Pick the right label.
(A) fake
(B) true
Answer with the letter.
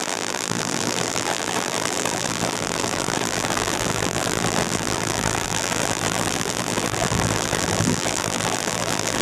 A